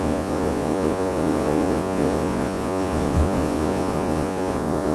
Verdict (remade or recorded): remade